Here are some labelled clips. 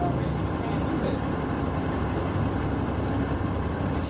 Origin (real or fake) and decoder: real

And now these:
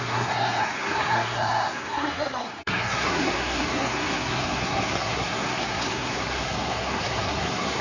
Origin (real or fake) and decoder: fake, codec, SNAC